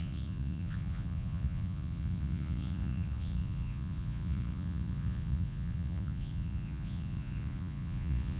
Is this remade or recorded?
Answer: remade